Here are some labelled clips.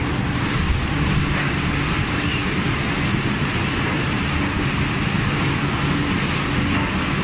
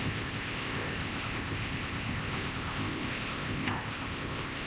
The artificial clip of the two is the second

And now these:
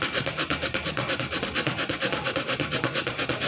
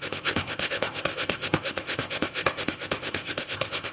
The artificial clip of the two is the second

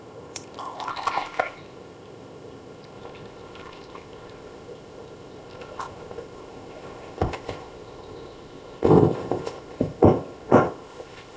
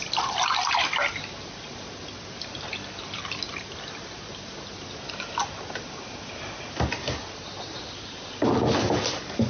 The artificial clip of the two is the first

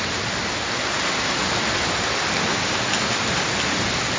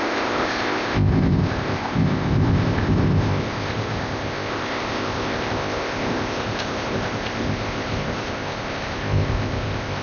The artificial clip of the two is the second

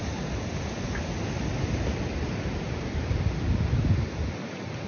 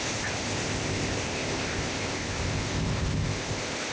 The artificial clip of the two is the second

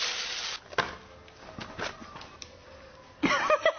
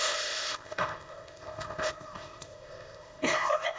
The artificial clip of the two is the second